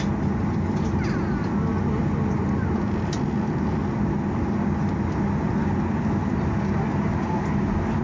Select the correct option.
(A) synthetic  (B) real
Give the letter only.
B